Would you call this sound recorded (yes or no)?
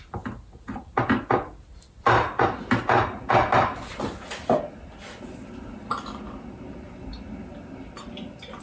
yes